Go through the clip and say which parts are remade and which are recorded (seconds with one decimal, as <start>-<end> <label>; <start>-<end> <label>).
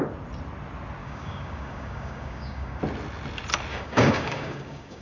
0.0-1.0 recorded; 1.0-2.8 remade; 2.8-3.7 recorded; 3.7-5.0 remade